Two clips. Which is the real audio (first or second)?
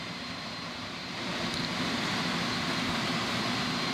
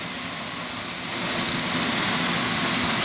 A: second